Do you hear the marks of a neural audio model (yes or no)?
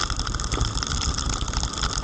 no